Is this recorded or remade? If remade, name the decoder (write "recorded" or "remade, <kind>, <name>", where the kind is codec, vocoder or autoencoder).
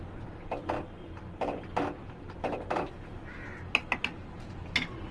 recorded